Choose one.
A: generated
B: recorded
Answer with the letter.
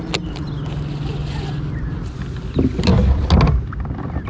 B